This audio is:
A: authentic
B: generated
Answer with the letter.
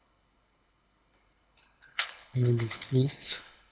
B